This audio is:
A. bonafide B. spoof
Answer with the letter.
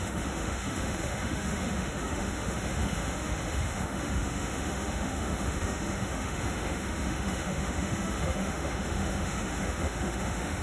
B